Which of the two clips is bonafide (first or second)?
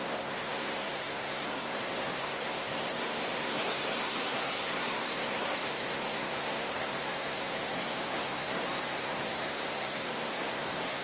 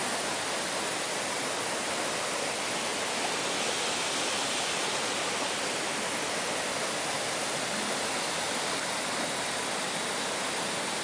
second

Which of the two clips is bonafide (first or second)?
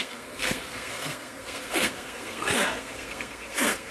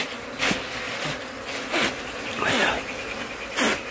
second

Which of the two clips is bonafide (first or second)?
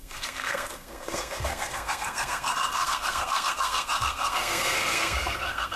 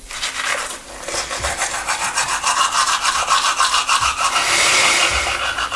second